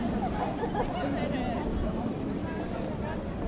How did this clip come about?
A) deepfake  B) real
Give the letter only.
B